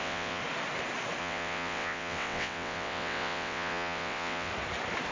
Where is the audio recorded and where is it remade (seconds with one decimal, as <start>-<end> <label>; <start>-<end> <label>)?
0.0-0.4 remade; 0.4-1.2 recorded; 1.2-4.5 remade; 4.5-5.1 recorded